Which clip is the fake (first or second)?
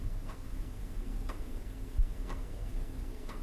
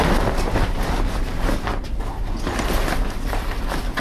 first